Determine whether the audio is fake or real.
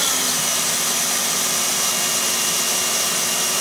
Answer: real